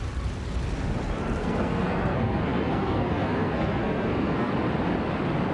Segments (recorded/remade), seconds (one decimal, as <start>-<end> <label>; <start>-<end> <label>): 0.0-1.4 recorded; 1.4-4.5 remade; 4.5-5.5 recorded